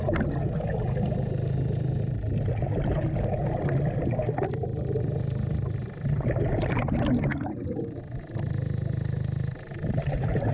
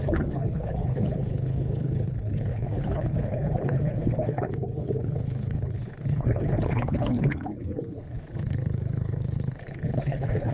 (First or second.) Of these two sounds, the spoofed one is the second